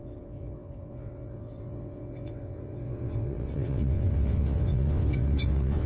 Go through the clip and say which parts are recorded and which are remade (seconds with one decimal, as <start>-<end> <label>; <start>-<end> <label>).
0.0-5.9 remade

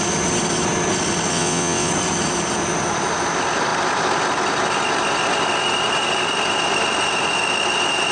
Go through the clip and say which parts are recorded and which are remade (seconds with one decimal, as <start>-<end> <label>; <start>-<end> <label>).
0.0-1.3 recorded; 1.3-1.9 remade; 1.9-8.1 recorded

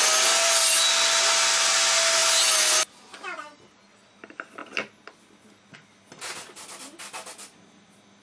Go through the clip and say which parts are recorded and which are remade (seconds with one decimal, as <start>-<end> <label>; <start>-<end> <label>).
0.0-8.2 recorded

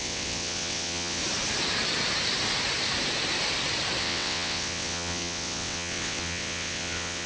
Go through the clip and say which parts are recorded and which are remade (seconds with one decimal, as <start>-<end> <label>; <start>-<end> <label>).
0.0-1.2 remade; 1.2-4.0 recorded; 4.0-7.3 remade

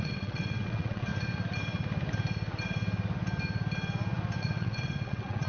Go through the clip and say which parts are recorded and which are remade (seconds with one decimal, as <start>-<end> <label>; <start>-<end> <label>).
0.0-1.1 remade; 1.1-4.4 recorded; 4.4-5.5 remade

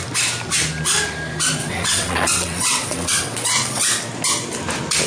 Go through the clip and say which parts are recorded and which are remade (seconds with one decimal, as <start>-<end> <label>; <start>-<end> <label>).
0.0-1.6 recorded; 1.6-3.8 remade; 3.8-5.1 recorded